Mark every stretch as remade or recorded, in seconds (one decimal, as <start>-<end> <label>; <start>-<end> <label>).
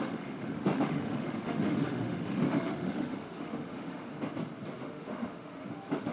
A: 0.0-4.1 remade; 4.1-4.8 recorded; 4.8-6.1 remade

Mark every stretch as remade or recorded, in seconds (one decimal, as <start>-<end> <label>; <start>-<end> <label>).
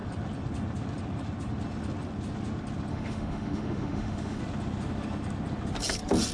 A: 0.0-2.9 recorded; 2.9-4.4 remade; 4.4-6.3 recorded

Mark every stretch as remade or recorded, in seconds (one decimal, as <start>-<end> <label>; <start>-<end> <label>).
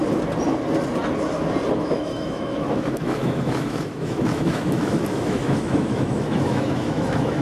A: 0.0-1.8 recorded; 1.8-7.4 remade